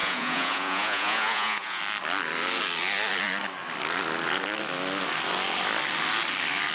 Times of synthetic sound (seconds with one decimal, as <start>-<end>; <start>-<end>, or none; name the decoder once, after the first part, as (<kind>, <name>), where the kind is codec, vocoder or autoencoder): 0.0-1.8 (vocoder, Vocos)